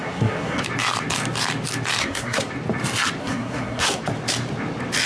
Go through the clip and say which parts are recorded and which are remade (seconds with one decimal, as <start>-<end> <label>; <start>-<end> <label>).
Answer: 0.0-0.6 remade; 0.6-2.0 recorded; 2.0-2.5 remade; 2.5-3.2 recorded; 3.2-4.0 remade; 4.0-5.1 recorded